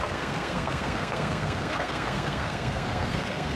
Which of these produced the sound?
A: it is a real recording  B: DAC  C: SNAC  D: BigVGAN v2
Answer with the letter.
C